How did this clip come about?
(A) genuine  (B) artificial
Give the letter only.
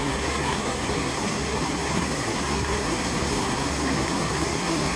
B